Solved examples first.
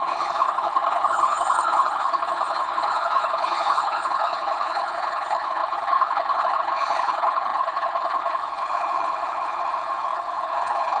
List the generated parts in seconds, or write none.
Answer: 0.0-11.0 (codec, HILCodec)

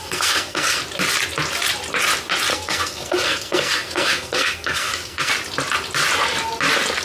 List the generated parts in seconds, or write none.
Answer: 0.0-0.8 (codec, SNAC); 2.5-5.3

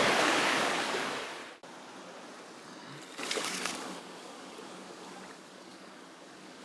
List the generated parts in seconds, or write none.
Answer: 0.0-1.4 (codec, DAC); 3.3-6.6

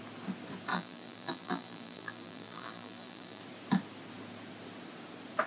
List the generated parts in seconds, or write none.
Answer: 0.7-3.4 (vocoder, BigVGAN v2)

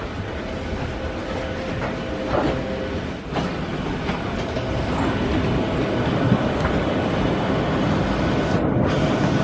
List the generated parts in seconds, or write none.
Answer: none

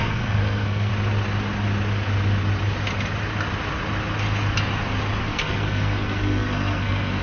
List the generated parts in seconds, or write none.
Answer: 0.0-0.9 (codec, SNAC); 5.2-7.2